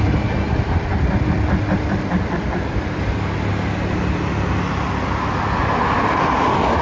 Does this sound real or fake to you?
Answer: real